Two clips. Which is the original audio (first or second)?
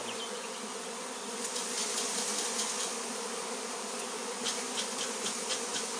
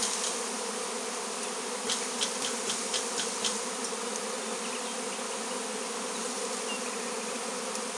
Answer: second